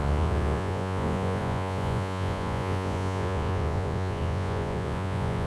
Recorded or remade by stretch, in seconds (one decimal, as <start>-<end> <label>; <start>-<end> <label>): 0.0-5.5 remade